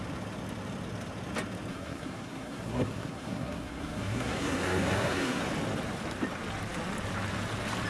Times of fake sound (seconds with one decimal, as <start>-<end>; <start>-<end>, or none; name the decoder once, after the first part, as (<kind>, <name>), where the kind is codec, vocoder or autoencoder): 1.7-5.4 (codec, SNAC)